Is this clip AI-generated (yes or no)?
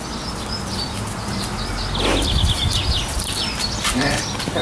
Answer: no